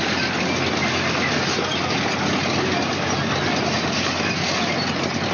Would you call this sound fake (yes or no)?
no